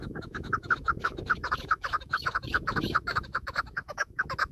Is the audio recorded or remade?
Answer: remade